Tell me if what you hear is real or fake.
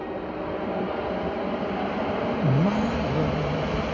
real